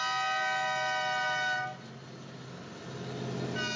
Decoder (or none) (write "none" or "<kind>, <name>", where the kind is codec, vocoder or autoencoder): none